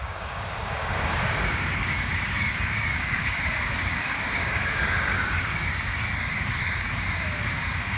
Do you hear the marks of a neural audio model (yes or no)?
yes